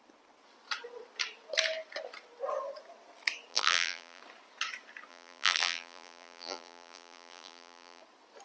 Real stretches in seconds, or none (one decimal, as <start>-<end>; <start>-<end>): 0.0-3.5; 4.2-5.1; 8.0-8.4